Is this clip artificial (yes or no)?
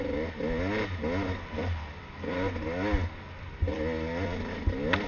no